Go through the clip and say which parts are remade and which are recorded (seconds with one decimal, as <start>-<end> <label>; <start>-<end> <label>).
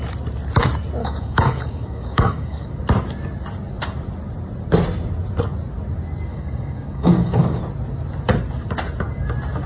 0.0-1.0 recorded; 1.0-2.7 remade; 2.7-6.3 recorded; 6.3-7.6 remade; 7.6-9.7 recorded